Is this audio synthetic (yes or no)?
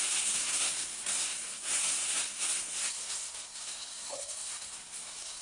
yes